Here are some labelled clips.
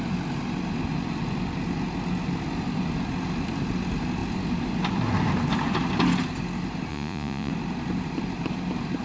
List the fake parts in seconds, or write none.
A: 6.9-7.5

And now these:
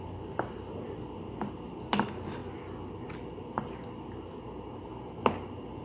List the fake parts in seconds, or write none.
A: none

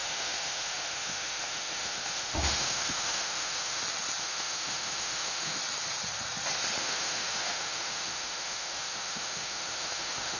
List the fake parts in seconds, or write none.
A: 0.0-3.8; 4.2-5.6; 6.8-10.4